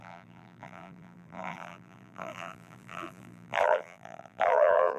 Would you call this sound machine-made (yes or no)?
yes